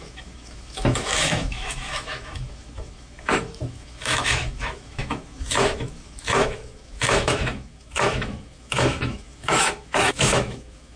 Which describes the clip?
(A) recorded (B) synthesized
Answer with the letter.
B